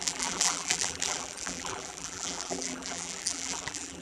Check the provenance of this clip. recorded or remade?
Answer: remade